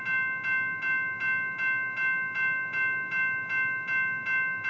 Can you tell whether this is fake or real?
real